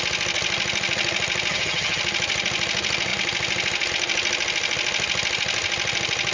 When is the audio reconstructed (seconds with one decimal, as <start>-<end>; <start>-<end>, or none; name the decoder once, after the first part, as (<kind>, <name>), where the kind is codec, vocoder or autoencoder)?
1.5-2.0 (vocoder, HiFi-GAN)